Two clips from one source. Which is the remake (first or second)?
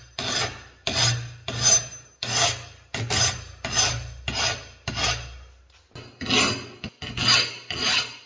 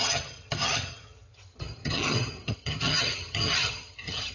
second